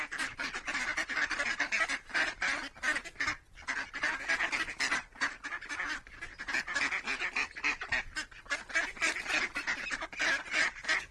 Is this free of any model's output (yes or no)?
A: yes